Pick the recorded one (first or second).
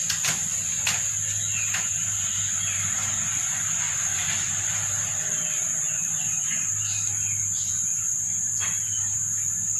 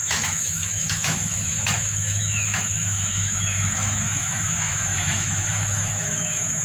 first